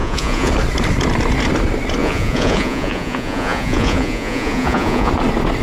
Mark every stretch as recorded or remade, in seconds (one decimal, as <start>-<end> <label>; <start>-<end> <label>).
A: 0.0-0.5 remade; 0.5-2.0 recorded; 2.0-5.1 remade; 5.1-5.6 recorded